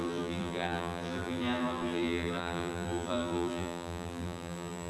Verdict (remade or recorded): remade